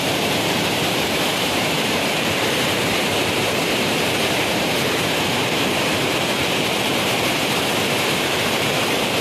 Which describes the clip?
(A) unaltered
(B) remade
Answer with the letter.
B